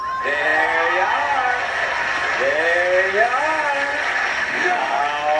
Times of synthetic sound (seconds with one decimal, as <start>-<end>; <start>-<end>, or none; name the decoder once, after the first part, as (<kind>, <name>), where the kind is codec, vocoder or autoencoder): 4.3-5.0 (autoencoder, DAC-VAE)